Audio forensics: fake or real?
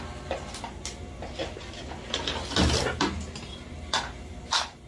real